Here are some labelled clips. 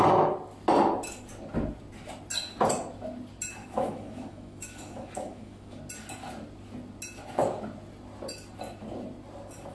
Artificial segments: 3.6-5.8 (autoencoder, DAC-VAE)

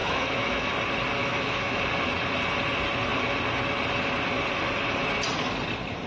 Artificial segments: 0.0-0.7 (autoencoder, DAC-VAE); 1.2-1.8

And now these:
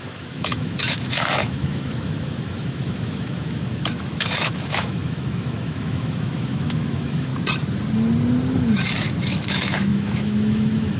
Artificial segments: 0.0-7.3 (autoencoder, DAC-VAE); 9.2-11.0